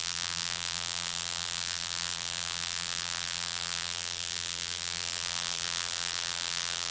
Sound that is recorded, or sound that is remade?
remade